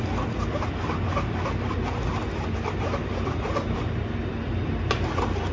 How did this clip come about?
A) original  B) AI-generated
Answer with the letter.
A